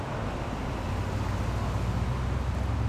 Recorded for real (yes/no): yes